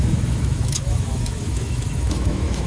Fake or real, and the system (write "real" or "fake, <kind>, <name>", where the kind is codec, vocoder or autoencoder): fake, autoencoder, DAC-VAE